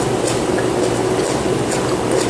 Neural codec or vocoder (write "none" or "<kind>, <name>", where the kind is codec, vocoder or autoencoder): none